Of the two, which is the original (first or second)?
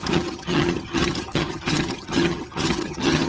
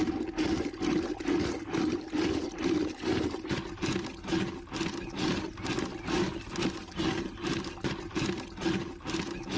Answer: second